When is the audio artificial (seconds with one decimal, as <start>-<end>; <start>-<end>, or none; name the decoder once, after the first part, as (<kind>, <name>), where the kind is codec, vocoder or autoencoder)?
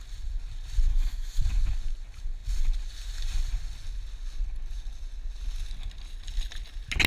0.9-1.4 (autoencoder, DAC-VAE)